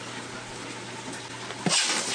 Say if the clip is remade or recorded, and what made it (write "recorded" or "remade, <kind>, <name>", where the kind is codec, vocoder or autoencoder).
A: recorded